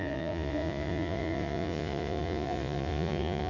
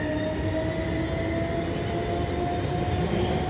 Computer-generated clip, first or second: first